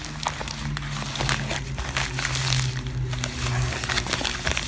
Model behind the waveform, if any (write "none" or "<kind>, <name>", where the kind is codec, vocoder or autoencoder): none